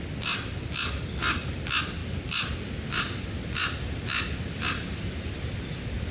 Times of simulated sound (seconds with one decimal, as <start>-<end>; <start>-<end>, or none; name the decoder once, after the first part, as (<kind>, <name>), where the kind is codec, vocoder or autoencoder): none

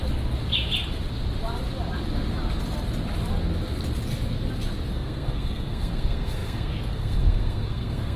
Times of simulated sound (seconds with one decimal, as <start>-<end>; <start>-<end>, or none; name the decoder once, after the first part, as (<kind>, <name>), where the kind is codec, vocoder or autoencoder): 4.9-8.2 (codec, SNAC)

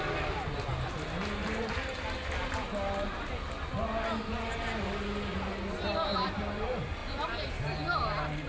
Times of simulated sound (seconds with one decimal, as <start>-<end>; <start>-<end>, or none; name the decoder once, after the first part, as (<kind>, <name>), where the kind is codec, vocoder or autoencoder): none

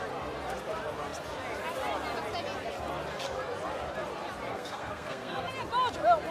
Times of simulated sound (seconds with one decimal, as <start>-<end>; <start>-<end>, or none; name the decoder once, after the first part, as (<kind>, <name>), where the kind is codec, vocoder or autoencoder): 4.5-5.5 (codec, SNAC)

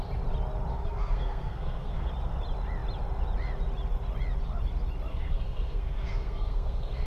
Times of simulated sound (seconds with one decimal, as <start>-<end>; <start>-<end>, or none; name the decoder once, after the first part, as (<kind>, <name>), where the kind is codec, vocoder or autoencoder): 0.7-2.1 (codec, SNAC); 5.1-7.1

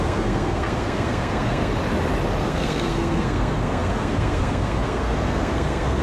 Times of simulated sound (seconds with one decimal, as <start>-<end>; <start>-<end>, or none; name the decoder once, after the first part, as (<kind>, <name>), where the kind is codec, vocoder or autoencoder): 0.0-1.7 (codec, SNAC); 2.4-6.0

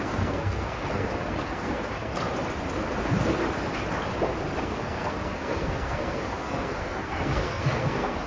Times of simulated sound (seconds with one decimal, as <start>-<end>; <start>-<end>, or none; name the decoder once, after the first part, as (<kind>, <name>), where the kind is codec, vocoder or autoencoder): 0.0-2.1 (codec, SNAC); 4.6-8.3